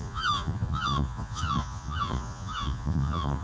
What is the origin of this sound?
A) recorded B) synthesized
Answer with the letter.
B